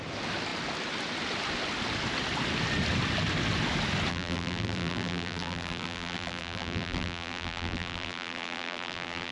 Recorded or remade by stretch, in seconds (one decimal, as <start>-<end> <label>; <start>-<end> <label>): 0.0-4.1 recorded; 4.1-9.3 remade